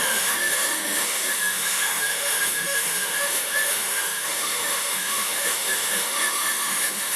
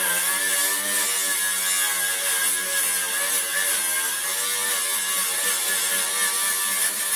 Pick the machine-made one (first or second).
first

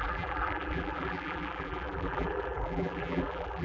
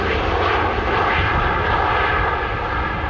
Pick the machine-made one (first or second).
first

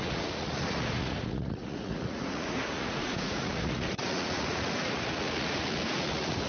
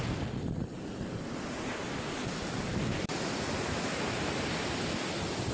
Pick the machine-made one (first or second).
first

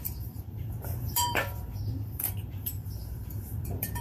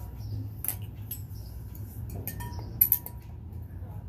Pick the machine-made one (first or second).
first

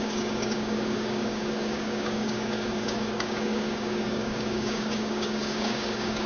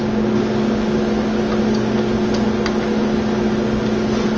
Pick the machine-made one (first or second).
first